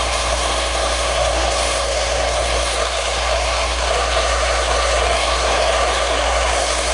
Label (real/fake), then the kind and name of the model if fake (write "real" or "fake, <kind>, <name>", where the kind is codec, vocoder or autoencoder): fake, codec, SNAC